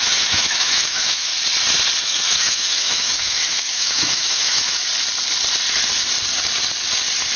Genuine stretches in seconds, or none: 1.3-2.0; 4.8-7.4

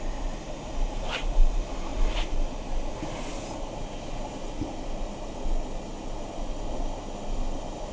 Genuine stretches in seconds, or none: 0.0-7.9

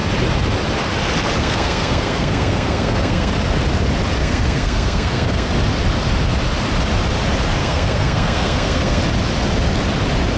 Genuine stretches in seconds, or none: 0.0-1.4; 3.3-4.2; 5.5-7.6; 9.0-10.4

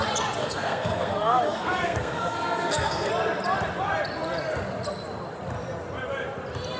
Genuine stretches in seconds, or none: 0.0-0.4; 3.1-6.8

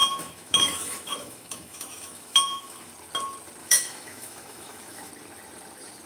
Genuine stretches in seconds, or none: 2.9-3.6; 5.1-6.1